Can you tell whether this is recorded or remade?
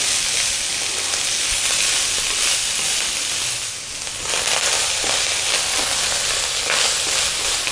recorded